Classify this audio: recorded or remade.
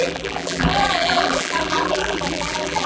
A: remade